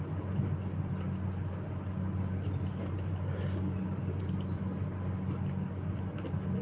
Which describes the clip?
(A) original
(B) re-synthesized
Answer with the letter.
A